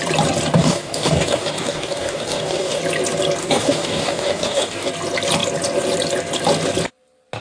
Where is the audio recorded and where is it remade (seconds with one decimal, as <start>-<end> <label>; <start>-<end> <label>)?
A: 0.0-0.6 recorded; 0.6-2.8 remade; 2.8-3.4 recorded; 3.4-4.9 remade; 4.9-7.4 recorded